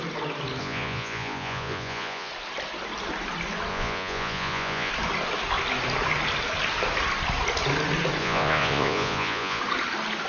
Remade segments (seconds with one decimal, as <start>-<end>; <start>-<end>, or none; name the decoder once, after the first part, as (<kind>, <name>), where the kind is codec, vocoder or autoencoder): 0.6-2.3 (vocoder, Vocos); 3.7-4.9; 8.2-9.6